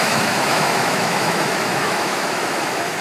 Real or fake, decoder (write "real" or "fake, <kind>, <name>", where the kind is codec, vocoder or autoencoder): fake, autoencoder, DAC-VAE